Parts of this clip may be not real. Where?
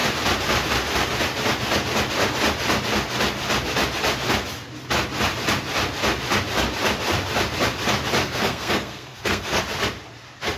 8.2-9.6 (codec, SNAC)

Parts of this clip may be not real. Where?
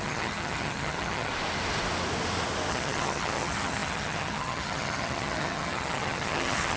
0.0-1.3 (vocoder, HiFi-GAN); 2.7-6.8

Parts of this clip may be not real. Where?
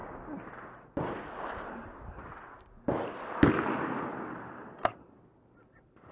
0.0-3.5 (vocoder, BigVGAN v2); 4.1-6.1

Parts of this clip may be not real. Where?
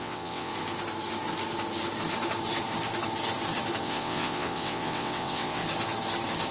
0.0-0.5 (vocoder, WaveNeXt); 3.8-5.6